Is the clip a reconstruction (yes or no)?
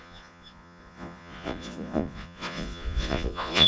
yes